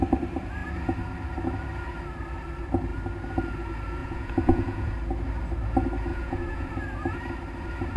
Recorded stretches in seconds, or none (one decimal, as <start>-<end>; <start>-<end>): 0.0-4.0; 4.9-6.1; 6.7-8.0